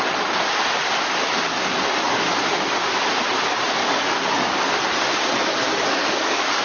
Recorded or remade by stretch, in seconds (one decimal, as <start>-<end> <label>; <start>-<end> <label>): 0.0-1.5 recorded; 1.5-2.2 remade; 2.2-3.8 recorded; 3.8-4.7 remade; 4.7-5.7 recorded; 5.7-6.6 remade